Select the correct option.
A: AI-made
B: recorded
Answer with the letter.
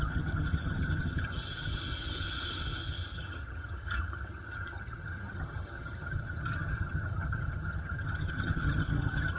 A